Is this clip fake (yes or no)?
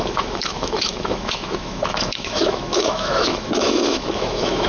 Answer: yes